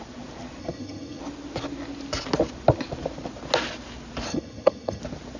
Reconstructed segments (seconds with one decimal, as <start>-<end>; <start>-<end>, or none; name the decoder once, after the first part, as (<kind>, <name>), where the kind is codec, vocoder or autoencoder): 0.6-1.2 (vocoder, HiFi-GAN); 4.3-5.0